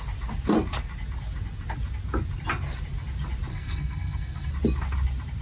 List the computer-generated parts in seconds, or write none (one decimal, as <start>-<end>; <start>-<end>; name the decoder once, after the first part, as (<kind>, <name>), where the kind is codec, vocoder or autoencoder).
3.5-4.5 (codec, SNAC)

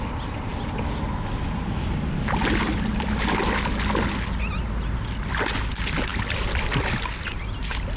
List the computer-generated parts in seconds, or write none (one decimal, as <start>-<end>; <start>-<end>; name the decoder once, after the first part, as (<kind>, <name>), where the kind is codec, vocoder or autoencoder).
none

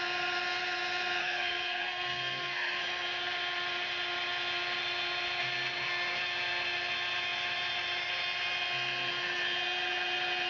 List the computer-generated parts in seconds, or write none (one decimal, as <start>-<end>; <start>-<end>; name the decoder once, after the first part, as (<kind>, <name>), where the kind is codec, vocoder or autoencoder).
1.2-2.8 (codec, SNAC)

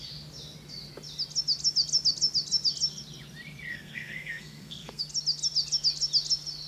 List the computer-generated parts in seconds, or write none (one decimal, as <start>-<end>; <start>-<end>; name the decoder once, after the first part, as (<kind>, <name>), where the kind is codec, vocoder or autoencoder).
3.7-5.0 (codec, SNAC)

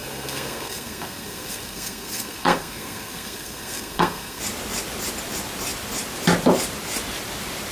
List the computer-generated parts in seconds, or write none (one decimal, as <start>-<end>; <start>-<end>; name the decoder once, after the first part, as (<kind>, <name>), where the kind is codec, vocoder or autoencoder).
0.0-4.4 (codec, SNAC)